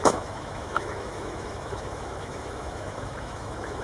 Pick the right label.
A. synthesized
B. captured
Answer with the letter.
A